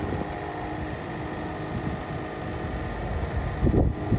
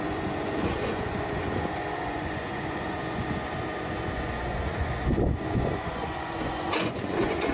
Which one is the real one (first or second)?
first